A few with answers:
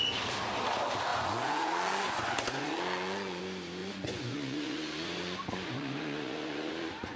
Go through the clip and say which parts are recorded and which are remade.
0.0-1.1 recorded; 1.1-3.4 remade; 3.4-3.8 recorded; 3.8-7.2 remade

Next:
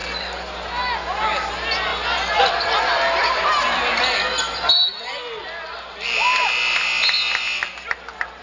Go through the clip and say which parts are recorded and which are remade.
0.0-8.4 recorded

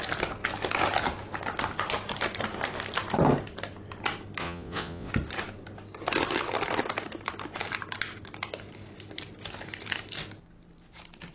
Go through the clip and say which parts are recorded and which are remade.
0.0-4.4 recorded; 4.4-5.1 remade; 5.1-11.3 recorded